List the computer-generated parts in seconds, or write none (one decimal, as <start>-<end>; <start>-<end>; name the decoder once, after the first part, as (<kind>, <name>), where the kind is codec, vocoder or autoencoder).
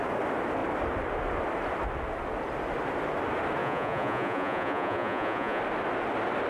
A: 3.6-5.6 (vocoder, Vocos)